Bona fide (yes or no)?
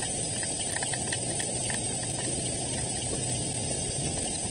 no